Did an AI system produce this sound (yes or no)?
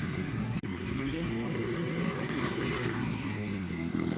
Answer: yes